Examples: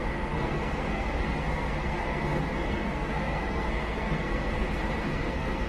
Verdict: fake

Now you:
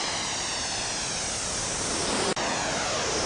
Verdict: real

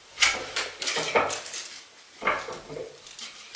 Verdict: fake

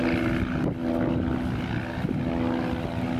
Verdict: real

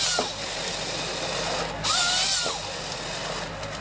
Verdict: real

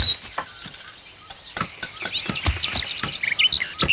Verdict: real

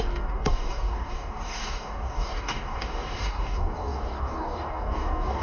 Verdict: fake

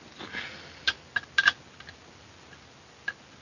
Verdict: real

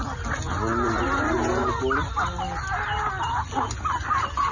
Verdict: real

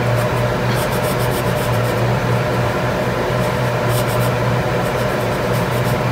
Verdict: fake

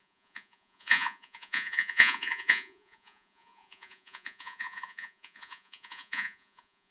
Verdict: fake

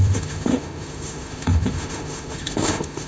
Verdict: fake